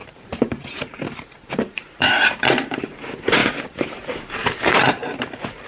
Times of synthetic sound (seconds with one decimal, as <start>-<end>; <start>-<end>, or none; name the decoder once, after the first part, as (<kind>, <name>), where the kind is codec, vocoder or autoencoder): 0.0-5.7 (vocoder, BigVGAN v2)